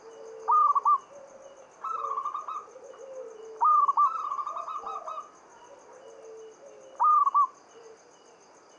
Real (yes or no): yes